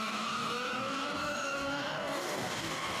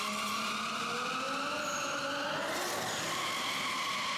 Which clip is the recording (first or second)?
second